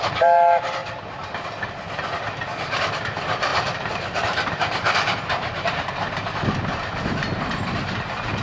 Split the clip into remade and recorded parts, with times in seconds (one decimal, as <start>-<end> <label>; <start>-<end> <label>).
0.0-3.5 recorded; 3.5-8.4 remade

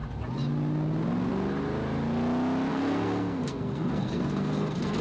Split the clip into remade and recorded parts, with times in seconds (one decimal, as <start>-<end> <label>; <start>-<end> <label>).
0.0-2.7 recorded; 2.7-5.0 remade

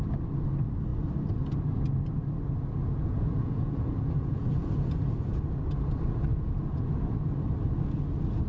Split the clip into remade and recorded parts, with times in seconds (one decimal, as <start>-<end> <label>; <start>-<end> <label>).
0.0-2.8 recorded; 2.8-4.7 remade; 4.7-6.3 recorded; 6.3-6.9 remade; 6.9-8.5 recorded

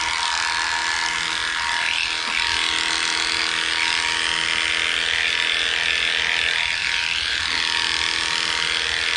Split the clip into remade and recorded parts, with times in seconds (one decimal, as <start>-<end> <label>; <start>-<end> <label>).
0.0-6.8 recorded; 6.8-7.4 remade; 7.4-9.2 recorded

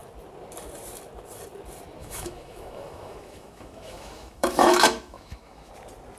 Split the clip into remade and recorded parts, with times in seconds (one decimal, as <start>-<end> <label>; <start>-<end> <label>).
0.0-2.0 recorded; 2.0-5.7 remade; 5.7-6.2 recorded